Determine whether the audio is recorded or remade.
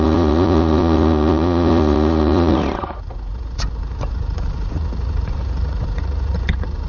remade